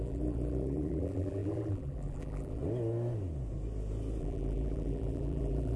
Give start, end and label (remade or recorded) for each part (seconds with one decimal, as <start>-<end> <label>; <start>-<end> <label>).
0.0-2.6 remade; 2.6-4.2 recorded; 4.2-5.8 remade